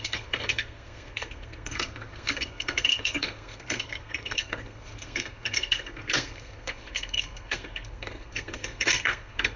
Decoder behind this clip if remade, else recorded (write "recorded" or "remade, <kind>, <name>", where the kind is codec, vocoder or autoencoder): remade, codec, SNAC